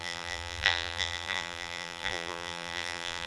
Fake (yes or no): yes